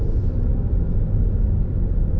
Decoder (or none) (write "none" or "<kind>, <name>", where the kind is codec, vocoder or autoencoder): none